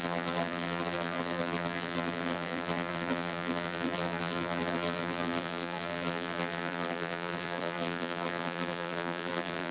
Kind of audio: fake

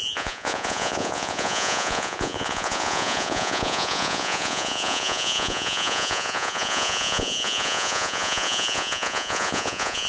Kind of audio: fake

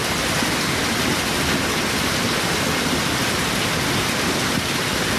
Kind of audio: real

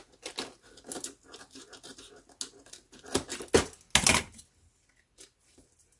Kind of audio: real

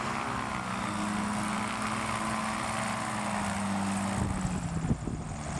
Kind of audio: real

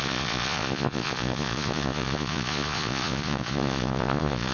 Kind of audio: fake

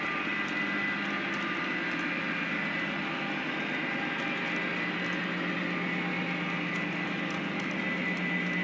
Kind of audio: real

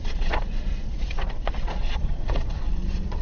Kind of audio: fake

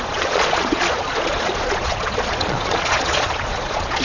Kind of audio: fake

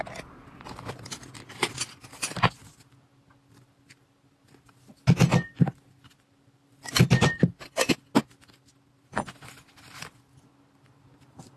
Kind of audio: real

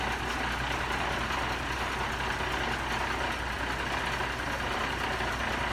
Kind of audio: real